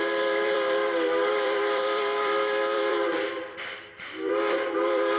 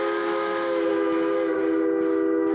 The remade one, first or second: first